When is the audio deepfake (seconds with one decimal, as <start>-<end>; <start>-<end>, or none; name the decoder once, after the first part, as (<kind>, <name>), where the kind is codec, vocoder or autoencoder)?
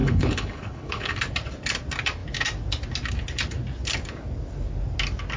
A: 0.0-1.1 (codec, HILCodec)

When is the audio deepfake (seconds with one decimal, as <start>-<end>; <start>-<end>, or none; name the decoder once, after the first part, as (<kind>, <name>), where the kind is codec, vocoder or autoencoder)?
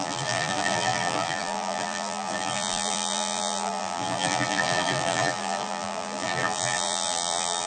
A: 0.0-7.7 (vocoder, BigVGAN v2)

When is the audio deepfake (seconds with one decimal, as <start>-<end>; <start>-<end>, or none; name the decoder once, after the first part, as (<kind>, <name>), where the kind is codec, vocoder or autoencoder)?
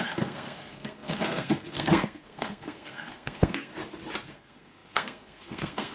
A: 0.0-3.7 (codec, SNAC); 4.3-5.9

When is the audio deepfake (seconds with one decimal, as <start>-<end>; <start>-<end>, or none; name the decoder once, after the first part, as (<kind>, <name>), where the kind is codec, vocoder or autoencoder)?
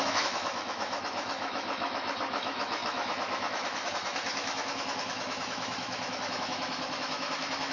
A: 0.0-7.7 (autoencoder, DAC-VAE)